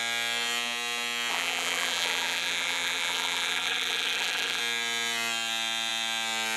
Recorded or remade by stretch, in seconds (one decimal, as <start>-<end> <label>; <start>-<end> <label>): 0.0-1.3 recorded; 1.3-4.6 remade; 4.6-6.6 recorded